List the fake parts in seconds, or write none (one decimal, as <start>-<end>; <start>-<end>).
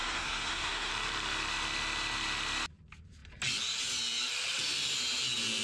0.0-0.9